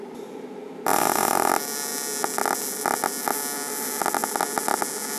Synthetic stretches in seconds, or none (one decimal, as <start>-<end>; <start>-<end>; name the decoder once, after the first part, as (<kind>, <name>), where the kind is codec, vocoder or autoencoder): 0.9-1.5 (vocoder, BigVGAN v2)